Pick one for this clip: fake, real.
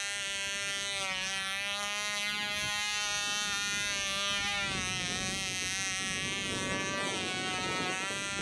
real